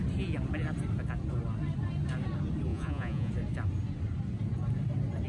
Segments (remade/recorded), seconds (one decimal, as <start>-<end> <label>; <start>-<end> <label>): 0.0-2.7 recorded; 2.7-3.3 remade; 3.3-5.3 recorded